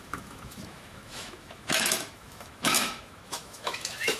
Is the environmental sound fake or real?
fake